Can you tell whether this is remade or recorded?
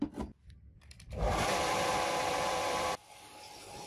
remade